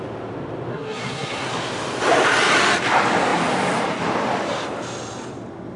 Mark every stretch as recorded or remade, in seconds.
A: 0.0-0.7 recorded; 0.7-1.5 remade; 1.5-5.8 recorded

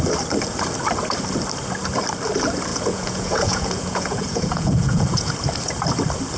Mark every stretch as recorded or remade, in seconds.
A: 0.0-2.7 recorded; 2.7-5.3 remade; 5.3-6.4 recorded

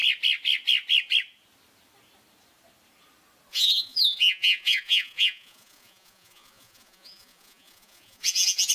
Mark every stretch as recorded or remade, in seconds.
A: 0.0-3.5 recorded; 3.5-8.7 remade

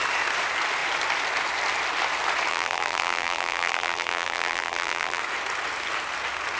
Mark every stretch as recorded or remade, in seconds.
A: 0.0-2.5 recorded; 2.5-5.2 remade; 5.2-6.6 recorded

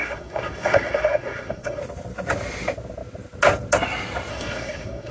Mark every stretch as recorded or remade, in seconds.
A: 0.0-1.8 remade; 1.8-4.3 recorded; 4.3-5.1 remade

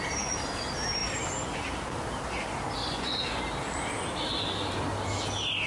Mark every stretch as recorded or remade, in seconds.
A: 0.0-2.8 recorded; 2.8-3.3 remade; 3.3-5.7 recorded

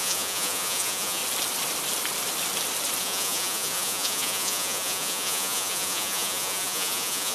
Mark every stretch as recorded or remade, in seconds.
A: 0.0-1.2 remade; 1.2-3.0 recorded; 3.0-7.3 remade